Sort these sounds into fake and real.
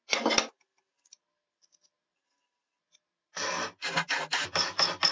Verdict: real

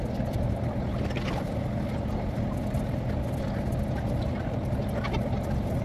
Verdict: real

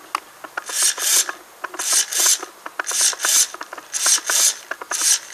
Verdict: real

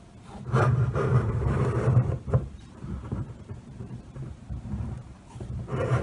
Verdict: fake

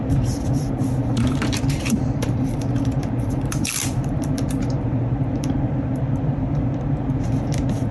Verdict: fake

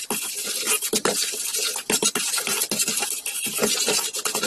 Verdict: real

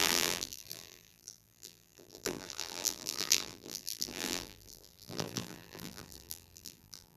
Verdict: fake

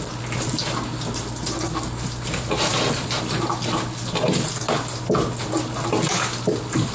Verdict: real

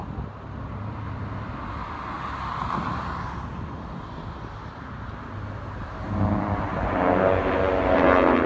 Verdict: real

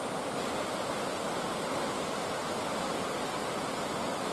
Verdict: real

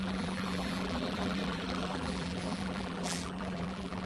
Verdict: fake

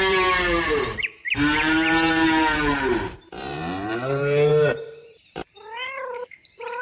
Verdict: fake